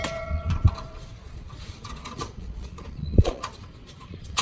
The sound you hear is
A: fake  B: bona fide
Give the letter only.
A